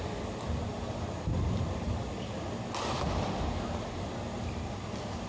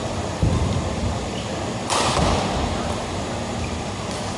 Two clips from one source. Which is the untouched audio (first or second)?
first